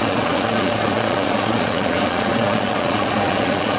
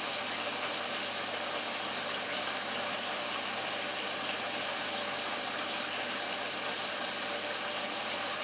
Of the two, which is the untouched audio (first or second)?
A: second